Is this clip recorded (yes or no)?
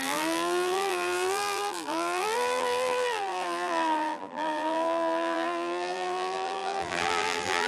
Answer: no